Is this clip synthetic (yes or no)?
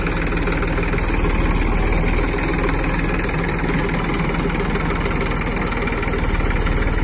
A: no